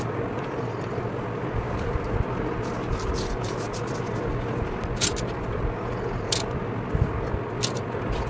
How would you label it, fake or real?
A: real